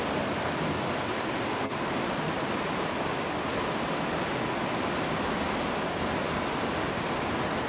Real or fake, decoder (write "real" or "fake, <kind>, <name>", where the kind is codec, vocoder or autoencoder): real